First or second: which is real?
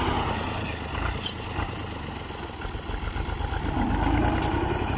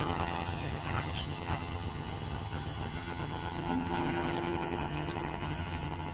first